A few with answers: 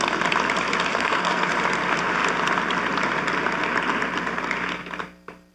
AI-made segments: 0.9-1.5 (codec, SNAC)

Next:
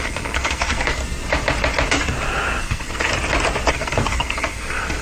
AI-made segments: 0.0-1.0 (codec, SNAC); 2.6-3.1; 3.7-5.0

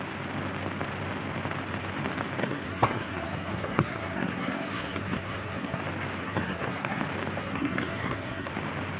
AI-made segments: 2.4-5.8 (codec, SNAC); 6.2-7.0; 7.4-8.5

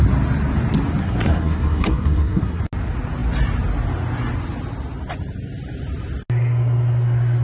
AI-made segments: 1.0-2.6 (codec, SNAC)

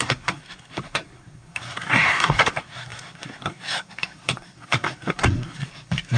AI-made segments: 0.0-6.2 (codec, SNAC)

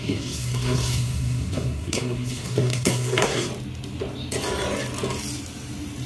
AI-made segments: 0.0-3.5 (codec, SNAC)